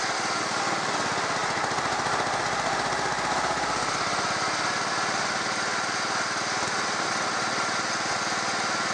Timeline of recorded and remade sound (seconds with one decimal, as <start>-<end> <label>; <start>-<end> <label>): 0.0-8.9 recorded